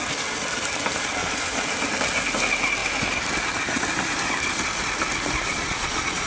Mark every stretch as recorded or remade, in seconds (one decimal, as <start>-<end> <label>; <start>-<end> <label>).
0.0-1.2 recorded; 1.2-1.7 remade; 1.7-5.5 recorded; 5.5-6.3 remade